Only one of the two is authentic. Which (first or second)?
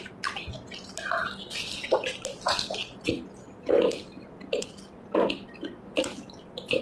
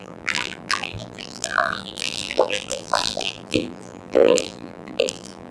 first